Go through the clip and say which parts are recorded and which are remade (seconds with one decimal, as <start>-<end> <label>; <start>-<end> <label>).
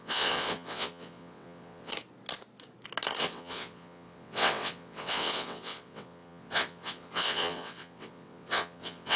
0.0-1.9 remade; 1.9-3.2 recorded; 3.2-9.2 remade